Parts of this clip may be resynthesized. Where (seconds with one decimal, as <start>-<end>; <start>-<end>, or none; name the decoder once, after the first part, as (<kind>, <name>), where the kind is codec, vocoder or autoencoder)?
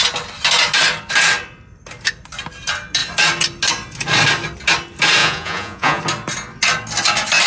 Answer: 5.2-6.0 (vocoder, Vocos)